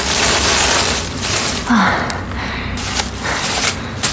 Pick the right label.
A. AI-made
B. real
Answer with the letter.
B